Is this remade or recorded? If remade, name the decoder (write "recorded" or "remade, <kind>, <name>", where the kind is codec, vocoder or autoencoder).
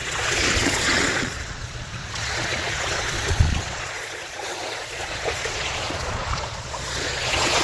remade, vocoder, Vocos